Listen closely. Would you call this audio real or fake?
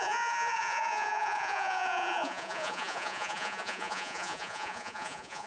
fake